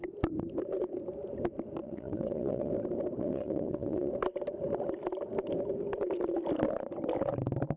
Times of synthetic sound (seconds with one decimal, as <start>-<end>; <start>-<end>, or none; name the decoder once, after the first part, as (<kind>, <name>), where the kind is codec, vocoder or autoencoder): 1.8-2.7 (vocoder, Vocos); 3.2-4.1